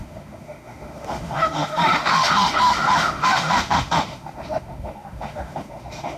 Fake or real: fake